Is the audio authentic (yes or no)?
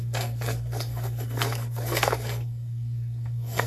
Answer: no